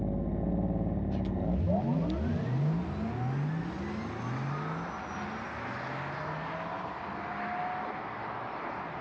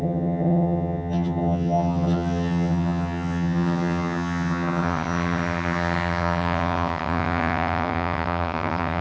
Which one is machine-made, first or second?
second